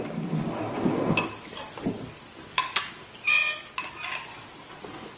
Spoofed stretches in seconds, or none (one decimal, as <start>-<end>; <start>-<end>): none

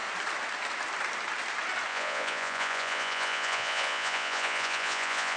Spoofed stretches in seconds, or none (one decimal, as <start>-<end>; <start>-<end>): 1.9-5.4

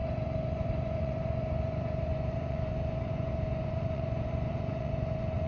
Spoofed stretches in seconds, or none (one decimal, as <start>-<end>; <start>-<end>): 0.0-5.5